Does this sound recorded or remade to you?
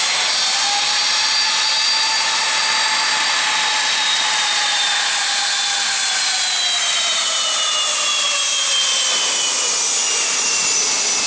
recorded